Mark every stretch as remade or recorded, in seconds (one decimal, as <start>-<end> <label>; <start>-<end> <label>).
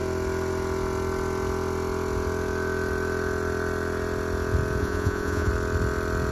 0.0-4.8 recorded; 4.8-5.5 remade; 5.5-6.3 recorded